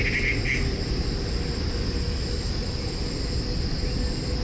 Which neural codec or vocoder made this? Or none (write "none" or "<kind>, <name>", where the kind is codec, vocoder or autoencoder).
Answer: none